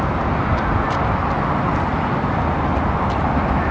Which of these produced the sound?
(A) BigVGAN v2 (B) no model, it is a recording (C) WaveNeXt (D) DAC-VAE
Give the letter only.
B